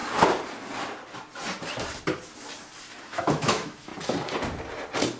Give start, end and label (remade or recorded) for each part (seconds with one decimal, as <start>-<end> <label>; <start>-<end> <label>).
0.0-3.1 recorded; 3.1-3.9 remade; 3.9-5.2 recorded